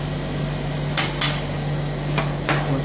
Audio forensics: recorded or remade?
recorded